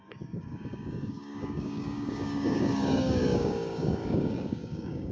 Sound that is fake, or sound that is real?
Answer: fake